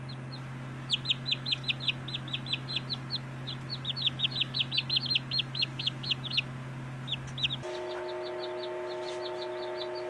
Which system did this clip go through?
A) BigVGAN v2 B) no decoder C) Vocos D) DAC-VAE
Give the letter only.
B